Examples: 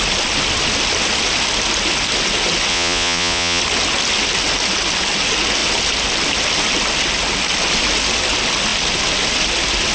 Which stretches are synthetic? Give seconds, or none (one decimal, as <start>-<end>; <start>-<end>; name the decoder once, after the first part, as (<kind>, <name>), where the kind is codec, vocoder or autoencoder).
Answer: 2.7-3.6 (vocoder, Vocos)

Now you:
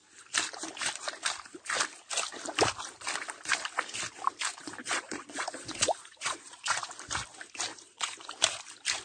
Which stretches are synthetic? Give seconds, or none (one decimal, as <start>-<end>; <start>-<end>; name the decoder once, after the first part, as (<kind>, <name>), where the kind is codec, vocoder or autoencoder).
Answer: 4.8-6.9 (vocoder, Vocos); 7.7-8.3

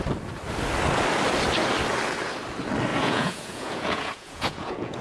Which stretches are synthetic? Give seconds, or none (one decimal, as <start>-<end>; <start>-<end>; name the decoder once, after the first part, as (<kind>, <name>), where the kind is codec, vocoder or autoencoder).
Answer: 2.9-5.0 (vocoder, Vocos)